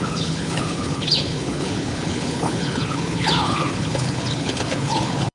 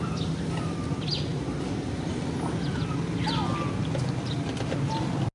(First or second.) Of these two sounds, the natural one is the second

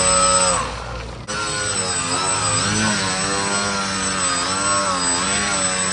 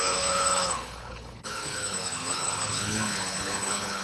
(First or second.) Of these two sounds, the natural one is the first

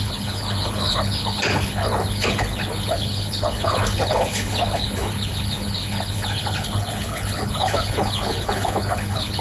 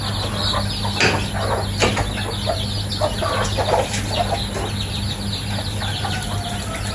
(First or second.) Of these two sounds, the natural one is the second